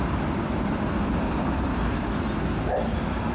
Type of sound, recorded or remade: remade